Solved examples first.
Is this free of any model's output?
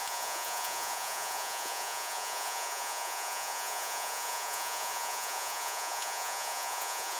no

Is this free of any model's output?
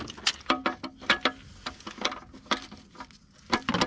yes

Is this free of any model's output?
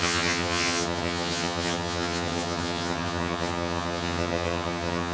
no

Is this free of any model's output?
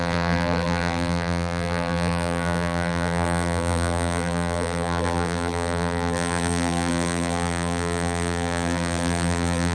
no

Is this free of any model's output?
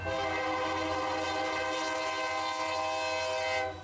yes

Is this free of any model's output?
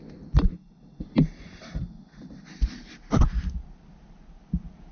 yes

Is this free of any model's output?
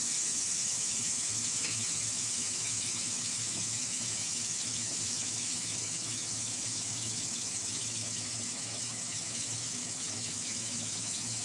no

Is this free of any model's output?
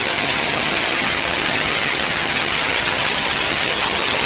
no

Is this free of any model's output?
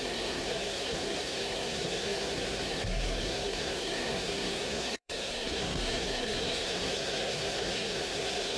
no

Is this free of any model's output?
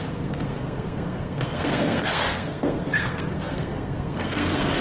no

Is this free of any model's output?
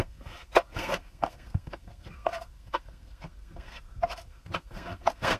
no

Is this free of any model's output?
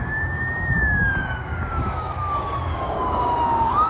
no